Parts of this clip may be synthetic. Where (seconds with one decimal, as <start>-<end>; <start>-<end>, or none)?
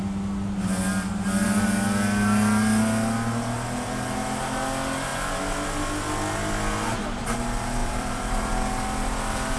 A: 7.8-8.5